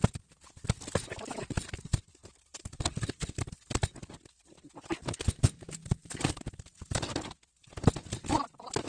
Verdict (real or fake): real